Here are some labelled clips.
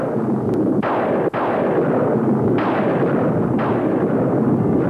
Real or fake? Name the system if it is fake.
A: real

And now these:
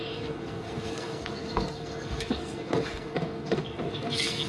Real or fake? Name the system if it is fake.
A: fake, codec, SNAC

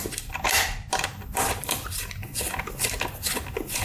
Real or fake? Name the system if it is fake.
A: real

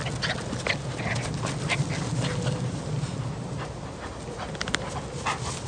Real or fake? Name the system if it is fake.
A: real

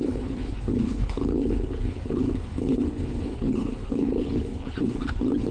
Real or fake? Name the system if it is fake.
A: fake, codec, HILCodec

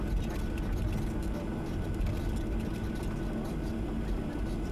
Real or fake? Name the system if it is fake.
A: real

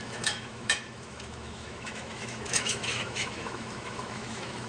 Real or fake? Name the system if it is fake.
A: fake, autoencoder, DAC-VAE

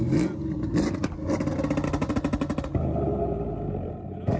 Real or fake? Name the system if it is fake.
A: real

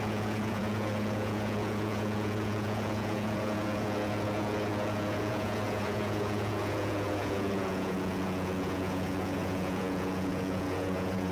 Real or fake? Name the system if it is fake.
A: fake, vocoder, Vocos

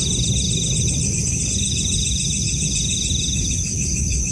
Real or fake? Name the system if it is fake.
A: real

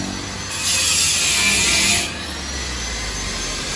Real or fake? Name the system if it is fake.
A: real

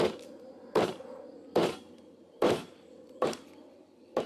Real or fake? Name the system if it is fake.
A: fake, vocoder, BigVGAN v2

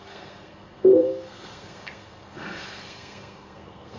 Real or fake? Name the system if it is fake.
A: fake, codec, SNAC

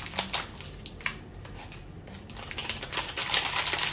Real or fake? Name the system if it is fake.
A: real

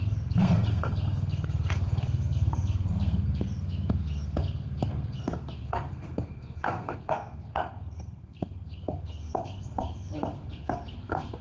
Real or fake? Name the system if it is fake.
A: fake, codec, SNAC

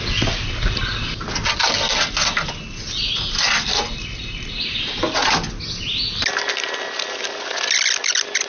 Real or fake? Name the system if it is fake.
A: real